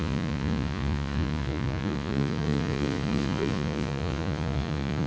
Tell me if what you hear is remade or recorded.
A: remade